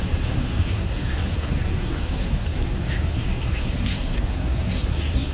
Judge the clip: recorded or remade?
remade